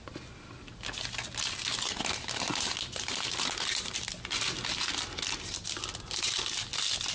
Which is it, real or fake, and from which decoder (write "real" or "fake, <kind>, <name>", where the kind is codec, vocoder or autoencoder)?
real